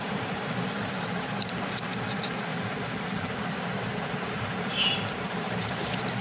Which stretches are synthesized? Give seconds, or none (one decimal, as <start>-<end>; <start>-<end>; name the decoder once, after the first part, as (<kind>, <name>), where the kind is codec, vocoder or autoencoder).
0.0-1.9 (vocoder, BigVGAN v2); 3.1-6.2